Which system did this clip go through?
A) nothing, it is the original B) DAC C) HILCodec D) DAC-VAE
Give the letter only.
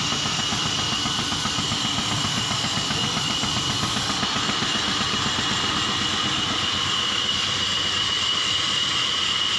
A